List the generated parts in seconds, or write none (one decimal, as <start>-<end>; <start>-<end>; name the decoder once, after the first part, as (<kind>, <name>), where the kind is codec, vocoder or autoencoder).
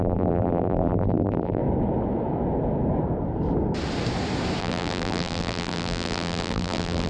0.0-1.6 (vocoder, BigVGAN v2); 4.6-7.1